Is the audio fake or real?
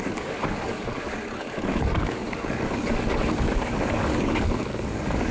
fake